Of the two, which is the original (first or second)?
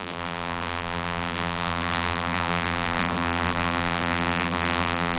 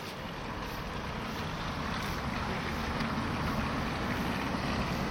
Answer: second